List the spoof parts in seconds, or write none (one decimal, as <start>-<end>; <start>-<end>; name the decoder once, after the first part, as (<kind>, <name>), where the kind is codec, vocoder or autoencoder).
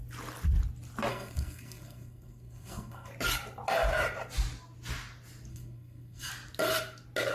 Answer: 1.1-3.1 (codec, SNAC); 5.5-6.3